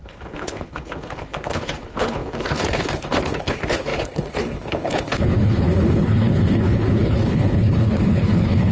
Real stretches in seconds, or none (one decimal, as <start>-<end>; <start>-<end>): none